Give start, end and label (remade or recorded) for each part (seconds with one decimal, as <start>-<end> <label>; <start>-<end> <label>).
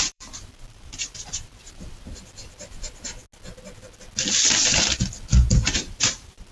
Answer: 0.0-3.2 remade; 3.2-5.5 recorded; 5.5-6.5 remade